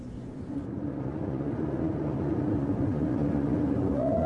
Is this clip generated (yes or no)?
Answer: yes